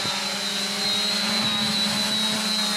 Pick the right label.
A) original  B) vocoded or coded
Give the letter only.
A